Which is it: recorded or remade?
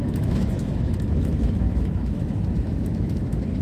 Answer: remade